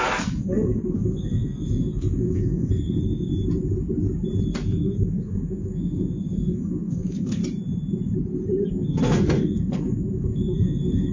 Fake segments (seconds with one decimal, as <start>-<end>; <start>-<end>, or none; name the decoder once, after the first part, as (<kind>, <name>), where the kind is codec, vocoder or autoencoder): 0.0-3.3 (codec, SNAC); 4.5-7.4; 8.7-11.1